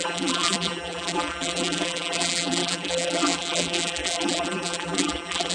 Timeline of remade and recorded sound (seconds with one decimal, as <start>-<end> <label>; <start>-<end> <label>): 0.0-5.5 remade